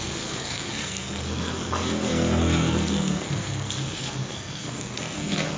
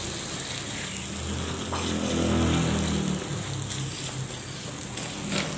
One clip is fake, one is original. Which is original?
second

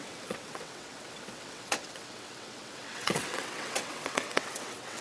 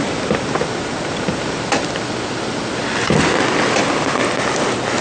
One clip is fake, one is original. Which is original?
second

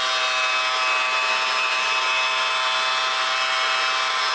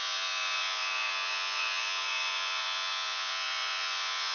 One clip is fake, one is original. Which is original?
first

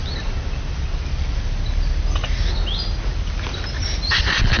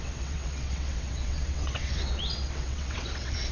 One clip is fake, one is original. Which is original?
first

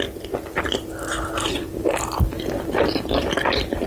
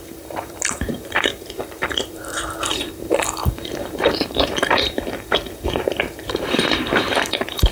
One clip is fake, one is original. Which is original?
first